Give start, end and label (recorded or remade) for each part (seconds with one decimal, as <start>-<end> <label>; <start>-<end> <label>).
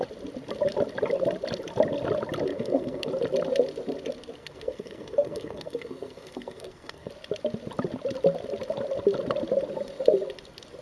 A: 0.0-2.5 recorded; 2.5-3.1 remade; 3.1-4.4 recorded; 4.4-7.1 remade; 7.1-10.8 recorded